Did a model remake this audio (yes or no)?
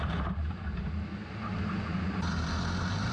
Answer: no